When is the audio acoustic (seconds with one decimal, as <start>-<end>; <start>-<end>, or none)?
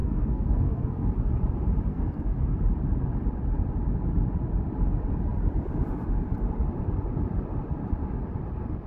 1.1-1.9; 2.6-8.9